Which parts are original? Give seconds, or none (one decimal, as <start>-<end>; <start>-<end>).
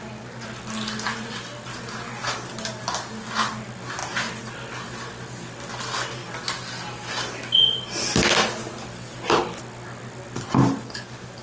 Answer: 0.0-11.4